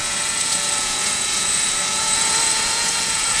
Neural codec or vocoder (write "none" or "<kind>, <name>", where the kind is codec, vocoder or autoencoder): vocoder, Vocos